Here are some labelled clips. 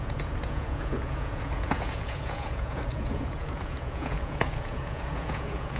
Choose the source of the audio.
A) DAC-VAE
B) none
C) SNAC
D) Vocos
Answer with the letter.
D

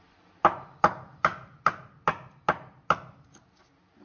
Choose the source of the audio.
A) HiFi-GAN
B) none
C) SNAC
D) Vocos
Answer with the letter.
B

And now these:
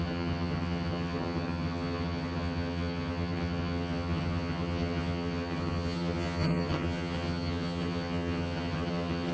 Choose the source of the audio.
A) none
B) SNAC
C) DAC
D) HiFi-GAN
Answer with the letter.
D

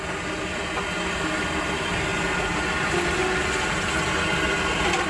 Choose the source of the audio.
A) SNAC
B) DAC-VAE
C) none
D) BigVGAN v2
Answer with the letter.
C